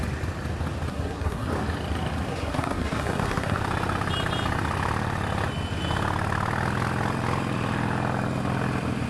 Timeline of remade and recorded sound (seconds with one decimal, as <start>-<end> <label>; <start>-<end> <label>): 0.0-0.9 recorded; 0.9-1.5 remade; 1.5-2.3 recorded; 2.3-3.6 remade; 3.6-9.1 recorded